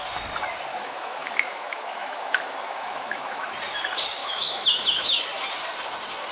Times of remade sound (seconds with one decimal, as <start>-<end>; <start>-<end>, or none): 0.7-3.5; 4.2-5.2